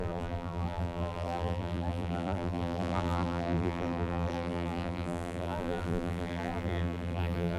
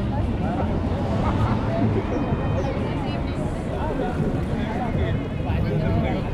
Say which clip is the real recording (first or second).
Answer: second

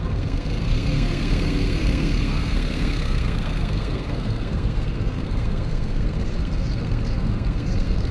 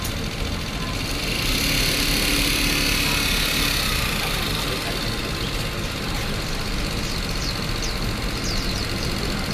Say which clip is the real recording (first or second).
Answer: second